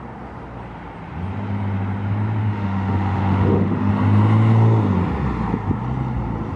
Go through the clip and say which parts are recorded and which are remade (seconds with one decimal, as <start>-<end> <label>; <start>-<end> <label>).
0.0-2.4 recorded; 2.4-3.9 remade; 3.9-6.6 recorded